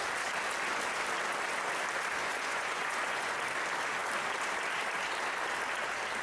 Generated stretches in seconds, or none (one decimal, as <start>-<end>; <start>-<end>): 2.2-3.3